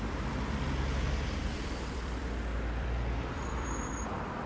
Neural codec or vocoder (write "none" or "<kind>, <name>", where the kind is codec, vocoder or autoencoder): vocoder, BigVGAN v2